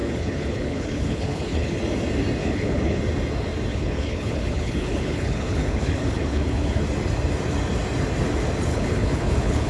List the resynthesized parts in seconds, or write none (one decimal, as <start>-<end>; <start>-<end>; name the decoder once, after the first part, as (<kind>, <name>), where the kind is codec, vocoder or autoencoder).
0.0-1.8 (codec, HILCodec); 2.4-3.0; 3.7-6.8; 8.7-9.7